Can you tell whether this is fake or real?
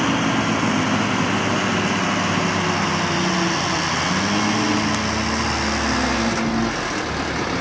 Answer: real